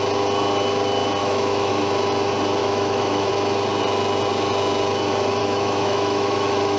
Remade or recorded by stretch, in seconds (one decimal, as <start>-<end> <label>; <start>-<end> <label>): 0.0-1.2 recorded; 1.2-1.7 remade; 1.7-2.6 recorded; 2.6-3.3 remade; 3.3-5.4 recorded; 5.4-6.8 remade